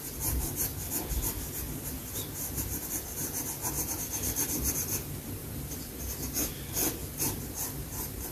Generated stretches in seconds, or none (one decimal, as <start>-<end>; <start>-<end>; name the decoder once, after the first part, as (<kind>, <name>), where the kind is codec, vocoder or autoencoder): none